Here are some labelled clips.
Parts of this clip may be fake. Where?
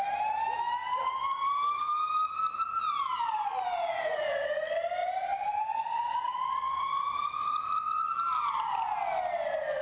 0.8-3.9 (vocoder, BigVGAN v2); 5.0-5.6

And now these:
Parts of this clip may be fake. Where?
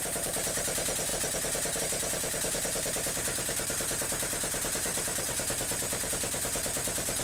0.0-7.2 (vocoder, BigVGAN v2)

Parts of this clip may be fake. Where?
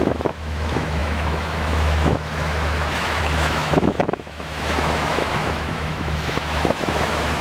0.0-7.4 (autoencoder, DAC-VAE)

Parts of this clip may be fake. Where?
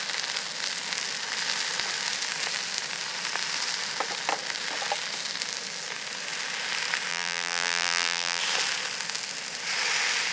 7.1-8.4 (vocoder, BigVGAN v2)